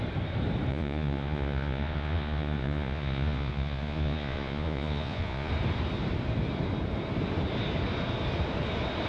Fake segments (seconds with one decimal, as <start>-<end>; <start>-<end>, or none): 0.7-5.5